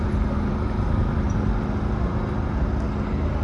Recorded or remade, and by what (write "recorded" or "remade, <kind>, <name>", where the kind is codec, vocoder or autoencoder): recorded